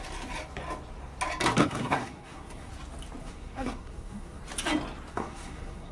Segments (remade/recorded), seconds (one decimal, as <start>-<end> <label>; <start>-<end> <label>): 0.0-1.6 recorded; 1.6-2.7 remade; 2.7-3.2 recorded; 3.2-4.4 remade; 4.4-5.1 recorded; 5.1-5.9 remade